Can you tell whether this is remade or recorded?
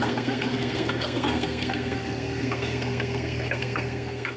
remade